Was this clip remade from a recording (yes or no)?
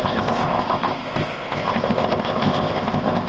yes